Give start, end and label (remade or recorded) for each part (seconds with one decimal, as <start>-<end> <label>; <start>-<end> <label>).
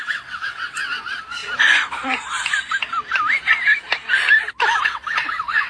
0.0-1.4 remade; 1.4-4.8 recorded; 4.8-5.7 remade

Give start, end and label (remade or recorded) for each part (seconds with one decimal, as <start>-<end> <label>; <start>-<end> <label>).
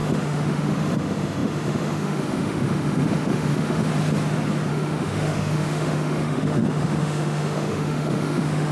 0.0-3.9 remade; 3.9-4.7 recorded; 4.7-8.7 remade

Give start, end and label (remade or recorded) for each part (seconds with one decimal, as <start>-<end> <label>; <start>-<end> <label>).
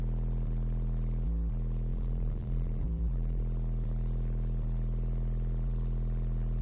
0.0-1.9 recorded; 1.9-3.4 remade; 3.4-6.6 recorded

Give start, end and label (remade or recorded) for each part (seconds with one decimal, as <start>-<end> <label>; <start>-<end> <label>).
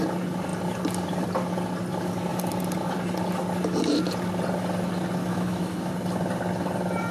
0.0-5.3 recorded; 5.3-5.9 remade; 5.9-7.1 recorded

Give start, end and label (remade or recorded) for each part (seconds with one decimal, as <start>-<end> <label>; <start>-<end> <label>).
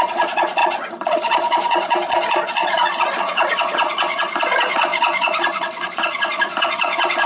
0.0-7.3 remade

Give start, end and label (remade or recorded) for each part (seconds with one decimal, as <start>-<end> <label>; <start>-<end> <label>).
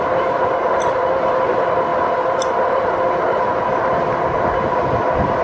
0.0-5.4 recorded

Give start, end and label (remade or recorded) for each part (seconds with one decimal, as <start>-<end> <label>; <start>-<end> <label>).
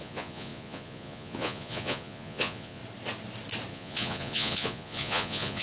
0.0-2.8 remade; 2.8-3.7 recorded; 3.7-5.6 remade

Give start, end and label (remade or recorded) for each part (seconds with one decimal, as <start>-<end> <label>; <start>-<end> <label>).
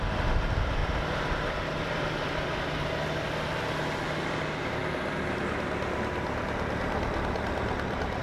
0.0-0.8 recorded; 0.8-3.0 remade; 3.0-8.2 recorded